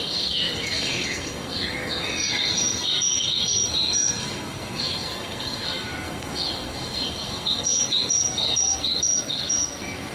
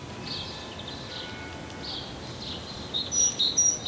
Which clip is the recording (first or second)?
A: second